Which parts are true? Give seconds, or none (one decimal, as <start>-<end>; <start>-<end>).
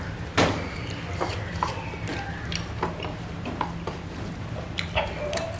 0.0-5.6